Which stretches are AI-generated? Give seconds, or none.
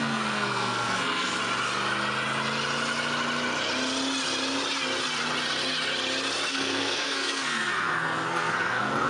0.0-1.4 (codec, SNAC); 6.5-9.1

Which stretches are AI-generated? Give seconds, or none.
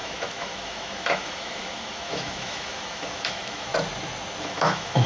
0.0-3.7 (autoencoder, DAC-VAE); 4.4-5.1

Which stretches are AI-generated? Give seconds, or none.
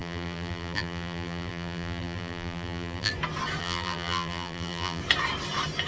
0.0-3.1 (vocoder, BigVGAN v2); 3.6-5.0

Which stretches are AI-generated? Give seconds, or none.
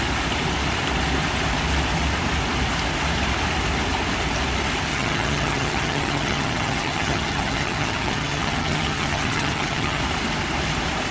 4.9-10.0 (vocoder, HiFi-GAN)